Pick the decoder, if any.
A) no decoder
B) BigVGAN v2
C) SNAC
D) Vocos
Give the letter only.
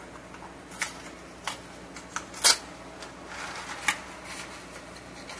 A